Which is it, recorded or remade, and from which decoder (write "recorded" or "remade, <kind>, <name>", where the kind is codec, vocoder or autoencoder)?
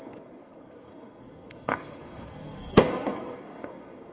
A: remade, codec, SNAC